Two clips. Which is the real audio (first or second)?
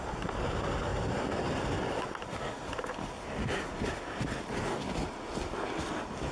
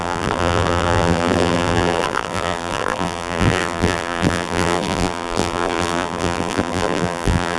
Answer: first